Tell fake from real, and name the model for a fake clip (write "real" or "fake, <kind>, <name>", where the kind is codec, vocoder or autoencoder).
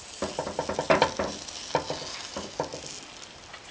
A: real